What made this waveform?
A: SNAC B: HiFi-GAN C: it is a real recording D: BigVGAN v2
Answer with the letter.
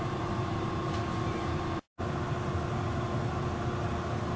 C